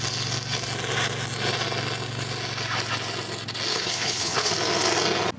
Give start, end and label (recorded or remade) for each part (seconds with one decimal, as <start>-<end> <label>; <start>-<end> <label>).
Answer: 0.0-3.7 recorded; 3.7-4.5 remade; 4.5-5.4 recorded